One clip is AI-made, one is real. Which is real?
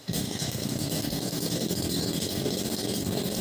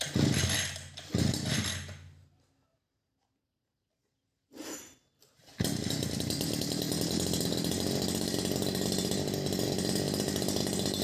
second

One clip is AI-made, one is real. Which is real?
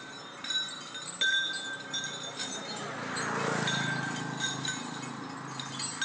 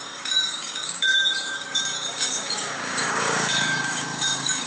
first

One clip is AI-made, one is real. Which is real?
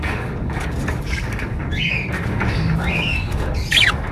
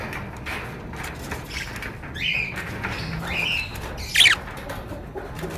second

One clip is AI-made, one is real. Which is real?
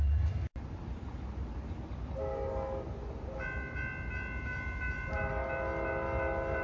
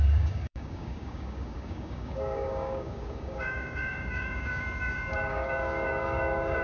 first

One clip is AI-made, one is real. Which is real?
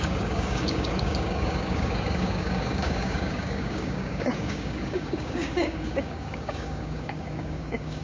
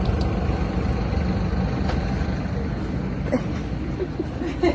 second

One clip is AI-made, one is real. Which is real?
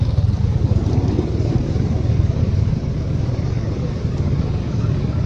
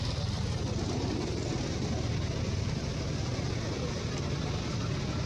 second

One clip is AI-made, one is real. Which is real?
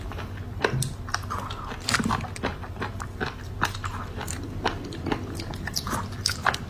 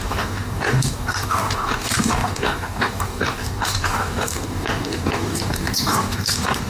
first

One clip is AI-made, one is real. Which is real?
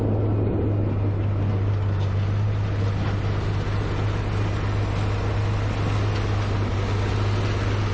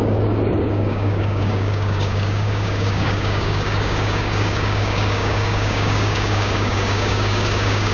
first